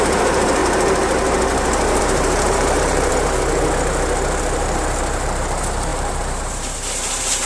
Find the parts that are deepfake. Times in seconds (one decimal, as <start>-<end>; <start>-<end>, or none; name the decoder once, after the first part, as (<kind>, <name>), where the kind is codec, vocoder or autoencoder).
0.0-0.6 (vocoder, BigVGAN v2); 2.0-3.1; 4.4-7.5